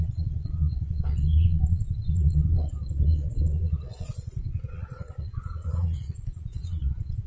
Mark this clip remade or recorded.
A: remade